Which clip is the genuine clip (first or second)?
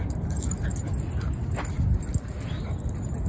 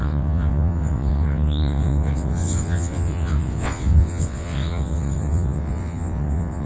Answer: first